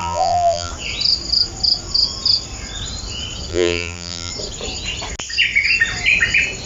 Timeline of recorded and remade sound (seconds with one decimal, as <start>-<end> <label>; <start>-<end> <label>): 0.0-0.7 remade; 0.7-3.5 recorded; 3.5-4.3 remade; 4.3-6.7 recorded